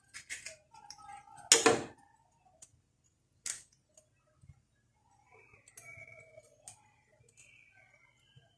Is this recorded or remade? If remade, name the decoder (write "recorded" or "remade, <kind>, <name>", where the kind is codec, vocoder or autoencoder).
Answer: recorded